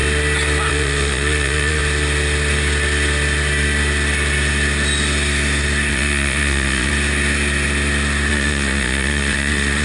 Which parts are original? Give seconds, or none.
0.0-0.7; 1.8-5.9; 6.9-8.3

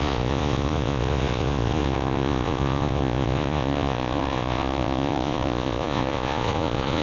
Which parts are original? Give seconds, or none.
none

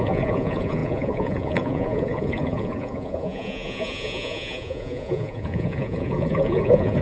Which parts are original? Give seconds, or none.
none

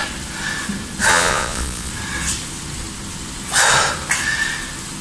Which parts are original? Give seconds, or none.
0.0-1.1; 1.9-5.0

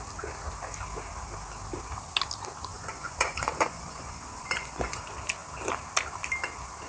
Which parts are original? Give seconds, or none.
0.0-2.7; 5.0-6.9

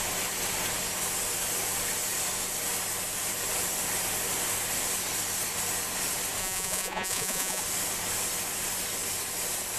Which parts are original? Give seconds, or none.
0.0-6.4; 7.6-9.8

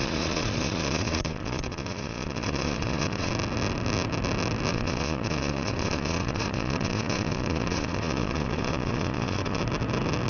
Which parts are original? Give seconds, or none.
3.3-4.7; 9.6-10.3

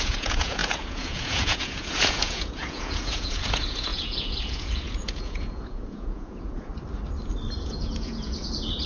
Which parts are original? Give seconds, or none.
6.7-7.6